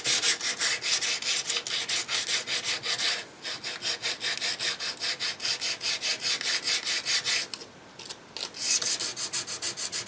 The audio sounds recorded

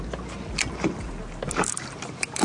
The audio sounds recorded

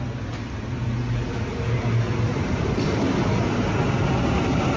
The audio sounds recorded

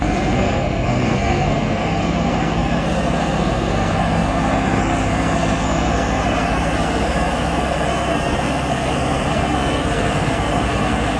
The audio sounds remade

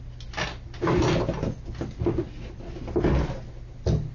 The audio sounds recorded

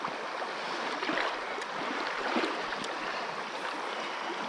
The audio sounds recorded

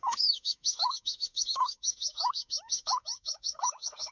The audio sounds remade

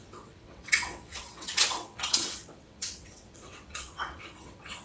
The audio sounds remade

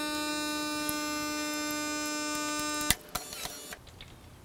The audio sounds recorded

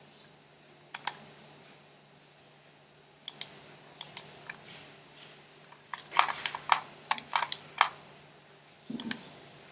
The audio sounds recorded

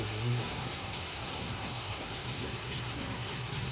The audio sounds remade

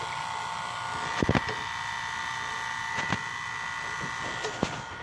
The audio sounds recorded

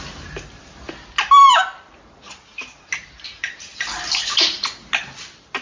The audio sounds recorded